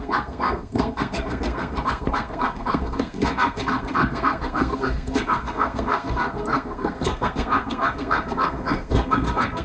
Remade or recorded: remade